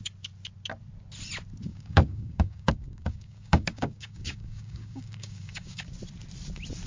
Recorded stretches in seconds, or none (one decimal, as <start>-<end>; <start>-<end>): 0.0-1.7; 5.8-6.9